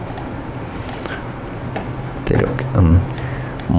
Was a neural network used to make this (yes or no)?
no